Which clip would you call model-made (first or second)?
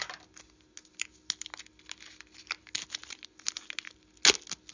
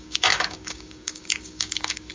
second